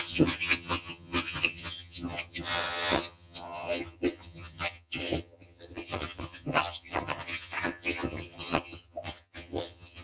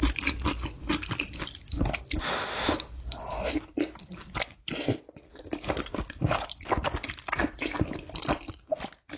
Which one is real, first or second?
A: second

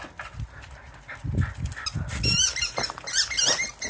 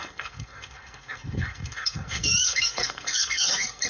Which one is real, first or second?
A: first